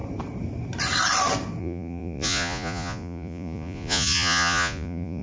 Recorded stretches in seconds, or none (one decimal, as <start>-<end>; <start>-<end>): 0.0-1.6